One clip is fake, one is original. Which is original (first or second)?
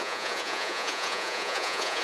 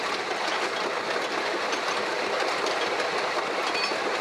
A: second